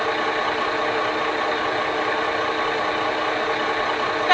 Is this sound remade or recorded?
recorded